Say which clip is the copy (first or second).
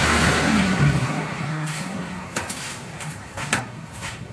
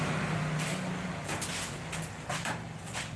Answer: first